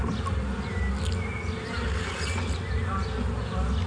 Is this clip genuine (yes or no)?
yes